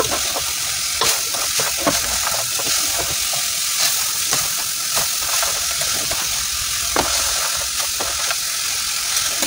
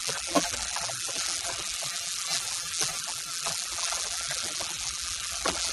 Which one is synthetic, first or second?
second